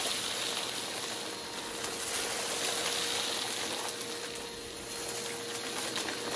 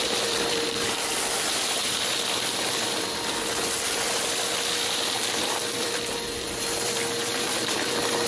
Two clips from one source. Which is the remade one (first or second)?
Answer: second